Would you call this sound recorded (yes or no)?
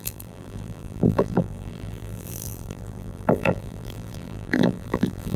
no